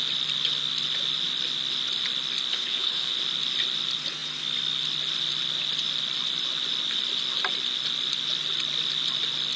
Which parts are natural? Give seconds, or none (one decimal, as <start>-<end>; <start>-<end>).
0.0-2.5; 3.1-9.6